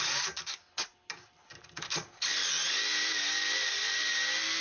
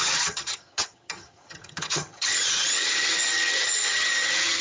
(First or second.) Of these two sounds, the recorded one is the first